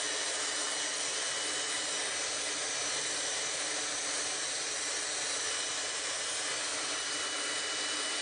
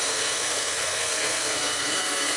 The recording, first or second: first